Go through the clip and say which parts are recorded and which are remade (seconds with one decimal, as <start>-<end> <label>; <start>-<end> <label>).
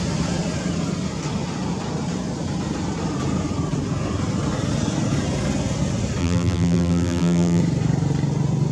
0.0-6.2 recorded; 6.2-7.6 remade; 7.6-8.7 recorded